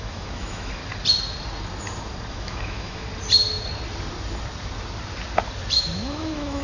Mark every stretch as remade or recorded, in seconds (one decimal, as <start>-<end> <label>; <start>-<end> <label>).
0.0-0.8 remade; 0.8-2.3 recorded; 2.3-3.1 remade; 3.1-5.8 recorded; 5.8-6.6 remade